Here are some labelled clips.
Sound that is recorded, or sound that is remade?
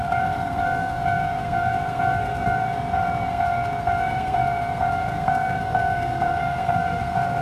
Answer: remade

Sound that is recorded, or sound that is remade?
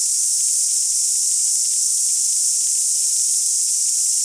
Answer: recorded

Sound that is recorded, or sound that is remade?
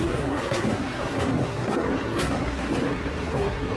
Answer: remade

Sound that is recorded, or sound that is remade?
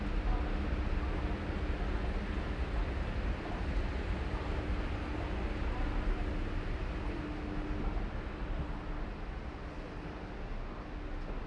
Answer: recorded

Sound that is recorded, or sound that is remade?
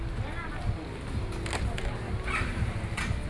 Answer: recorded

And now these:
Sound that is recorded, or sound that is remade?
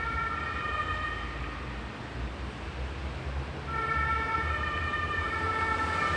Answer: recorded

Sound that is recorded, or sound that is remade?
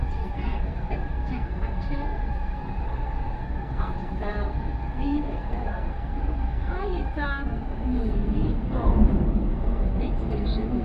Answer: remade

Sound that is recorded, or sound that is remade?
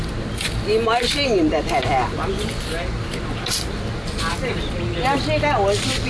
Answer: recorded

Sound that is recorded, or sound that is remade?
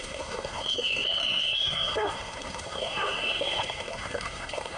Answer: remade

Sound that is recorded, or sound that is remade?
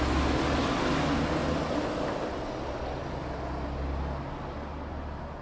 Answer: recorded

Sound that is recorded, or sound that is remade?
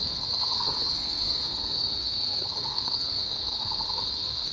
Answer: remade